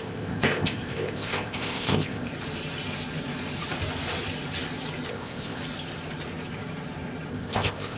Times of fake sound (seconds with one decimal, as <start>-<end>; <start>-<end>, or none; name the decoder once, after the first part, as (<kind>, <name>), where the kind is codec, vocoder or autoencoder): 0.0-2.3 (codec, ZipCodec); 5.1-5.6; 7.3-8.0